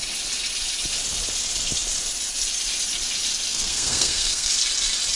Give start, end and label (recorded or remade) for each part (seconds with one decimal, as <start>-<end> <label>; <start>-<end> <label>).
0.0-3.5 recorded; 3.5-4.5 remade; 4.5-5.2 recorded